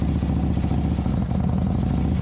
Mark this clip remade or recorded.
recorded